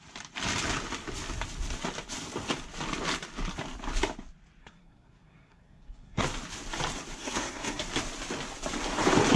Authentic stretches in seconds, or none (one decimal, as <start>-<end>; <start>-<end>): 0.0-4.6; 6.2-7.2; 7.8-9.4